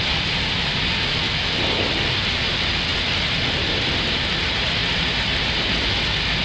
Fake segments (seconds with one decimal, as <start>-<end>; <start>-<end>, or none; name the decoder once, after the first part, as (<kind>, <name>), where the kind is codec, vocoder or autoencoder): none